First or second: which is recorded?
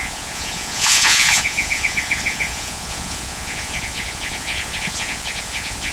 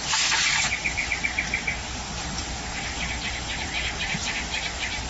second